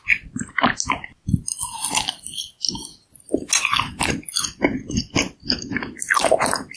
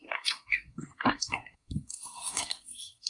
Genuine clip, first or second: first